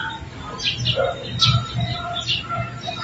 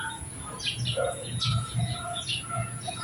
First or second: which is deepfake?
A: second